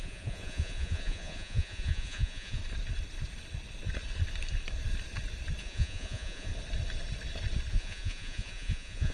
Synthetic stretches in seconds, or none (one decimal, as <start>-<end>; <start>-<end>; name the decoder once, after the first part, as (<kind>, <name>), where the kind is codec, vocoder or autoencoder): 0.0-2.6 (vocoder, Vocos); 5.6-6.5; 7.7-9.1

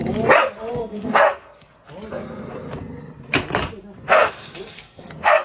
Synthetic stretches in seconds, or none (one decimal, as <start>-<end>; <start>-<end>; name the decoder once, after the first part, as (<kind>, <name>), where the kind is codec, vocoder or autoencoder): 0.7-1.7 (codec, SNAC); 4.1-5.4